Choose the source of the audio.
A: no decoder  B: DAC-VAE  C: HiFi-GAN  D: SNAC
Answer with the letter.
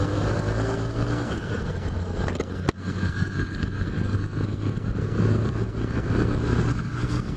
D